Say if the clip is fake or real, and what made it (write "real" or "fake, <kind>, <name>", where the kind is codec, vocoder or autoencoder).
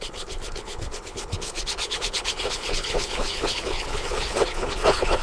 fake, codec, HILCodec